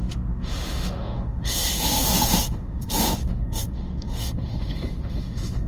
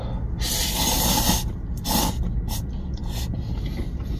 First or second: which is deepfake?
first